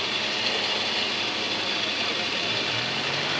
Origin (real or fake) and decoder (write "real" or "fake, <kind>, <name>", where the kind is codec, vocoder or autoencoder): real